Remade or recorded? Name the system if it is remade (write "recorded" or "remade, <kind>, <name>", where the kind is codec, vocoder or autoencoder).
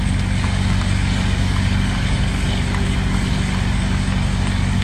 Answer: remade, codec, DAC